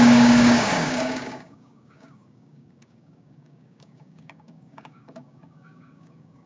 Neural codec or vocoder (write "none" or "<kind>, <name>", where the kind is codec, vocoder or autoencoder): codec, DAC